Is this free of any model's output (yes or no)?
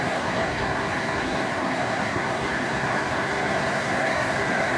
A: no